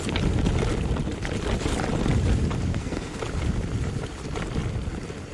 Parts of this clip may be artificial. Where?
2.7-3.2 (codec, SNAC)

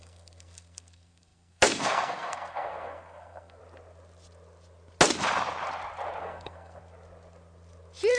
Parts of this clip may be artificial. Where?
0.0-3.6 (codec, SNAC); 6.2-6.8

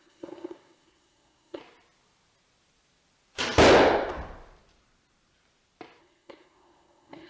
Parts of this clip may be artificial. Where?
0.0-1.6 (codec, SNAC); 6.0-7.3

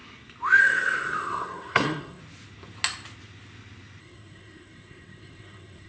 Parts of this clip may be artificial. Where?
0.6-2.2 (codec, SNAC); 4.0-5.9

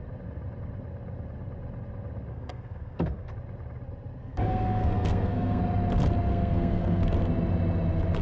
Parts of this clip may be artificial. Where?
2.3-3.3 (codec, SNAC); 4.2-5.6; 6.3-7.0

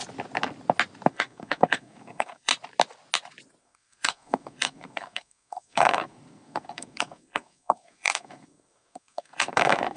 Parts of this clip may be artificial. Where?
1.1-2.5 (codec, SNAC); 3.6-10.0

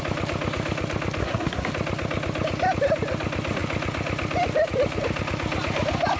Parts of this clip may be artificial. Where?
1.2-1.7 (codec, SNAC)